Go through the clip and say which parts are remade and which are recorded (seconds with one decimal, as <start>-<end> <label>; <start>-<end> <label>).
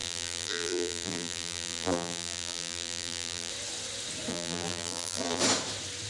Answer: 0.0-3.5 remade; 3.5-4.3 recorded; 4.3-5.4 remade; 5.4-6.1 recorded